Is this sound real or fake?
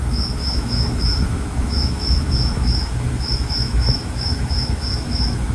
fake